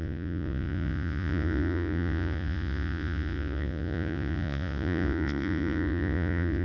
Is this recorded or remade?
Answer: remade